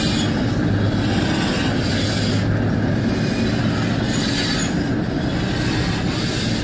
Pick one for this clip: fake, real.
real